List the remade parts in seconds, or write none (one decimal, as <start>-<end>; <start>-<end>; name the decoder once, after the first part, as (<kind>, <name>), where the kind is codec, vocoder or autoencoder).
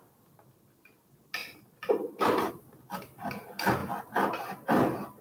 1.4-2.5 (vocoder, BigVGAN v2)